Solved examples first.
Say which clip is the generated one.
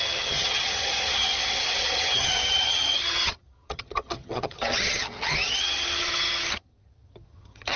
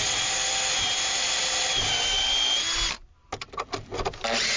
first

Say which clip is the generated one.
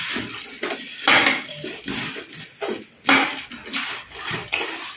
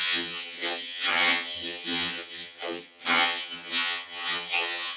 second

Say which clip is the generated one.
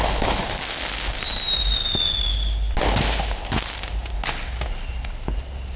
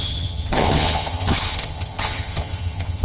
second